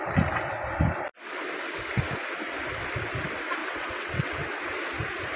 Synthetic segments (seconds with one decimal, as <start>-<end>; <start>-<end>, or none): 3.6-4.3

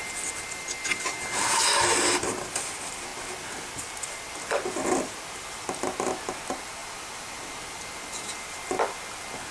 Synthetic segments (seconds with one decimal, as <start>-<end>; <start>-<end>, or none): none

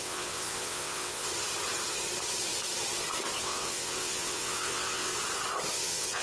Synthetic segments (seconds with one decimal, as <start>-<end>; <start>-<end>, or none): 0.0-1.3; 3.4-5.1; 5.7-6.2

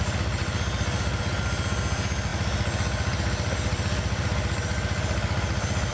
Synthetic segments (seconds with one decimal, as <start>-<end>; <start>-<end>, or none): none

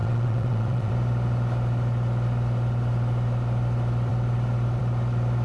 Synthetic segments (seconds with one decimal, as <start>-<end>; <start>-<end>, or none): 0.0-0.9

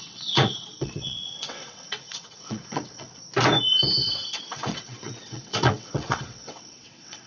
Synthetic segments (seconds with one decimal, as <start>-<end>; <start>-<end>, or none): 0.0-3.2; 4.0-7.3

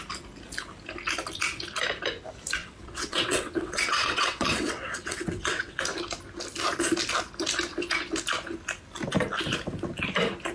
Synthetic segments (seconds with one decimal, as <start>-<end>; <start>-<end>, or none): 2.6-5.8